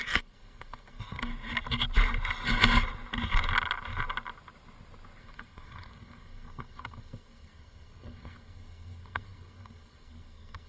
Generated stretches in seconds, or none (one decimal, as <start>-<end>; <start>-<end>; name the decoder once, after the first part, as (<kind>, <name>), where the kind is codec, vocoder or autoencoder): 0.0-1.3 (codec, SNAC); 5.2-10.7